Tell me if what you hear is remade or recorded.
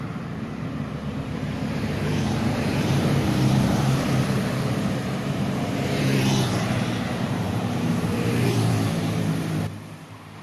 remade